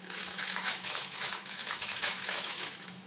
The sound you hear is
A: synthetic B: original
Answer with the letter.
A